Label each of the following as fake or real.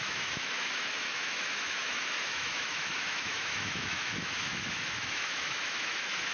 fake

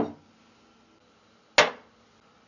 real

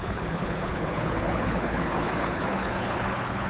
fake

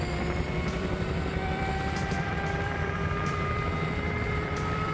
fake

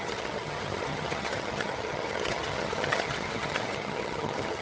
fake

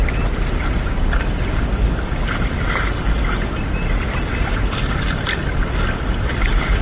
real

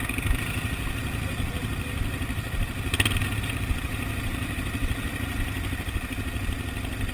real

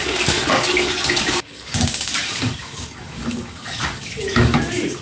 fake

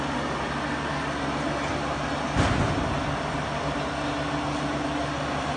real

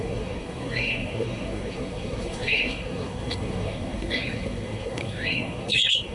fake